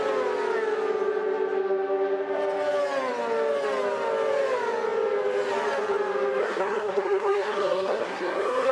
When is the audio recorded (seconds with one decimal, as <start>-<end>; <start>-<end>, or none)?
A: 0.0-6.4